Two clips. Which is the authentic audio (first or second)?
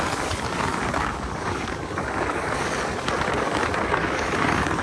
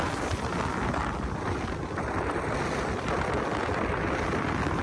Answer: second